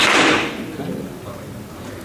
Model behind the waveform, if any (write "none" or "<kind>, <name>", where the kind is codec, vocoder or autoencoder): none